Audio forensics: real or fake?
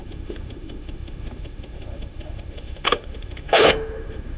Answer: fake